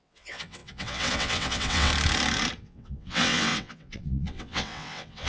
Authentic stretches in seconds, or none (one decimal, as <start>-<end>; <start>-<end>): 1.9-2.6